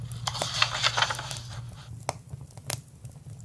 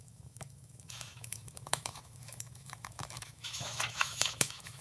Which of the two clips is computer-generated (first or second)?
second